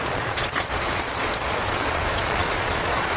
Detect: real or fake fake